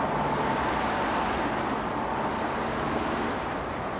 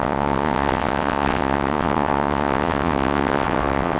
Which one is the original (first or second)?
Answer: first